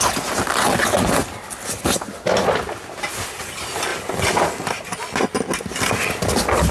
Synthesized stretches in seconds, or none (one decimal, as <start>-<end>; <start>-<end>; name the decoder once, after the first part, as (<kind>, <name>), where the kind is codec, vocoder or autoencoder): none